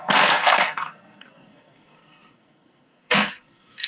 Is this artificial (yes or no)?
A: yes